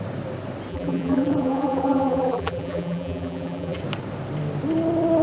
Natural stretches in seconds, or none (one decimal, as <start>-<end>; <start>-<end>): 0.0-0.7; 3.8-5.2

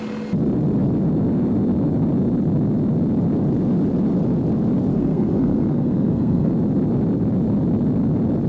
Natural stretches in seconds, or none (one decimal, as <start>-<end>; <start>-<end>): 0.0-4.9; 6.5-8.5

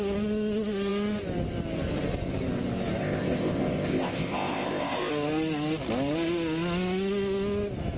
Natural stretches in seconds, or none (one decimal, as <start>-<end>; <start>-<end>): 0.0-3.0; 5.1-8.0

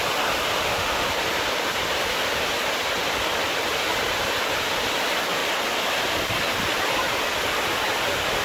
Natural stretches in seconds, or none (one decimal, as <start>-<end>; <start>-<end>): 0.0-0.5; 1.1-8.4

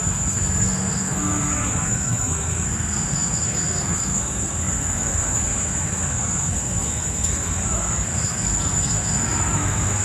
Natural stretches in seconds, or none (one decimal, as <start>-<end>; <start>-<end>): none

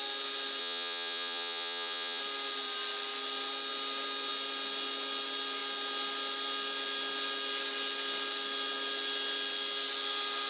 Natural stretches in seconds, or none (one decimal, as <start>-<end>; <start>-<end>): 0.0-0.6; 2.2-10.5

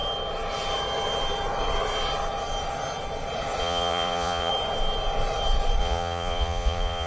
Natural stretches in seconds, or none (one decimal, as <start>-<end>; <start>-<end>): 0.0-3.6; 4.5-5.8

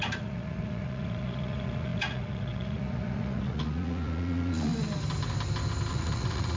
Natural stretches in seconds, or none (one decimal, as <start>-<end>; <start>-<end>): 4.7-5.9